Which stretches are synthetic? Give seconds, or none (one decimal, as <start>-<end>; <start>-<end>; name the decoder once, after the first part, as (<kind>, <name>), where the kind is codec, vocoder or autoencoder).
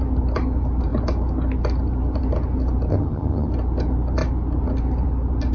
2.9-3.5 (vocoder, HiFi-GAN)